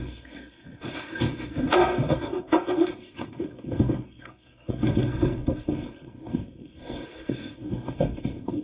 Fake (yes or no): yes